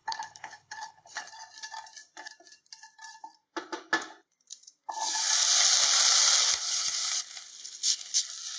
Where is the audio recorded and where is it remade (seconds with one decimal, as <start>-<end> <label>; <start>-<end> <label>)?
0.0-1.3 remade; 1.3-6.4 recorded; 6.4-8.2 remade; 8.2-8.6 recorded